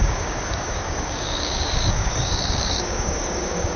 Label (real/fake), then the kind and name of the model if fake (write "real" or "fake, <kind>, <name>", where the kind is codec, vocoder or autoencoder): fake, codec, DAC